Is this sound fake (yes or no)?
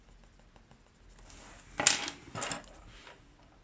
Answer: no